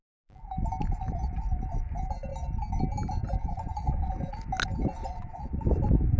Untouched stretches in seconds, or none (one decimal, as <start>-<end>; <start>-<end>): 0.0-3.4; 4.1-5.0; 5.6-6.2